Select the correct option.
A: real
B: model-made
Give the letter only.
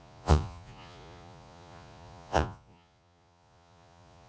B